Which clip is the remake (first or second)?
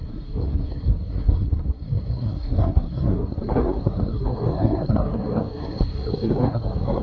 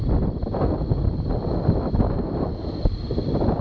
first